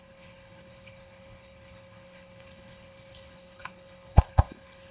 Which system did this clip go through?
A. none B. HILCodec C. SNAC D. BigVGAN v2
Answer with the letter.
B